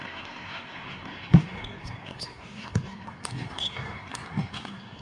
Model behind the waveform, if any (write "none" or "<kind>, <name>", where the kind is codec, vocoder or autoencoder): codec, SNAC